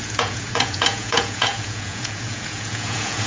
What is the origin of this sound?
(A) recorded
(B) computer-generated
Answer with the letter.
B